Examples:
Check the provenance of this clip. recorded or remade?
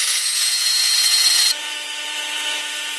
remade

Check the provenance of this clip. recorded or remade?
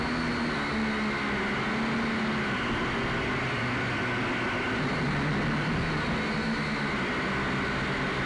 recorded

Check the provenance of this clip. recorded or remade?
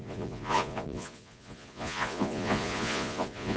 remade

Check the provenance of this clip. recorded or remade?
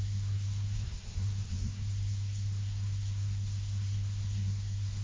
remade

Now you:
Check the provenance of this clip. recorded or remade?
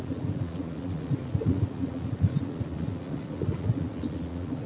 remade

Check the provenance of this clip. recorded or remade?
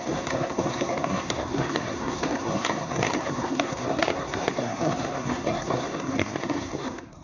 remade